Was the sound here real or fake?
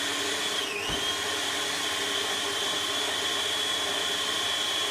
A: real